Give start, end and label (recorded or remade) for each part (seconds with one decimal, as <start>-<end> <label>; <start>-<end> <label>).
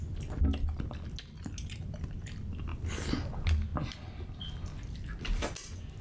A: 0.0-6.0 recorded